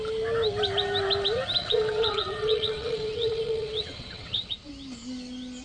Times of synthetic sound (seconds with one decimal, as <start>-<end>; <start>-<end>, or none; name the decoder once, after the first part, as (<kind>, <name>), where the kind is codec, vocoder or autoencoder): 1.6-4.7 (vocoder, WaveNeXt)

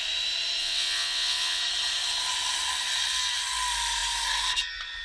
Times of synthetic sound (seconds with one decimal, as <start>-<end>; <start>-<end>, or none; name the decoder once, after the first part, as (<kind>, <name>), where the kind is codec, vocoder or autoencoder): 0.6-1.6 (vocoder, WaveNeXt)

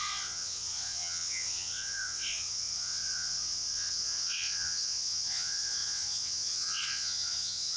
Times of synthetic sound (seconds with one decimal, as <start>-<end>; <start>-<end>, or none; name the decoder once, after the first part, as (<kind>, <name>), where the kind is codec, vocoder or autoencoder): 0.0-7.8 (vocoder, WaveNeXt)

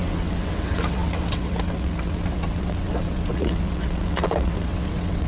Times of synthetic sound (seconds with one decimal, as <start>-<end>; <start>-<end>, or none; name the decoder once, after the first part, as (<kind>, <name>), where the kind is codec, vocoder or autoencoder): 0.0-5.3 (vocoder, WaveNeXt)

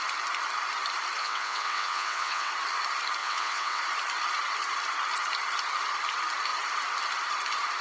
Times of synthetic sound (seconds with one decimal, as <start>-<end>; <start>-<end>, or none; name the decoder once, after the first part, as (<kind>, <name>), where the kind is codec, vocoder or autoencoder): 1.2-2.5 (vocoder, WaveNeXt); 3.2-3.8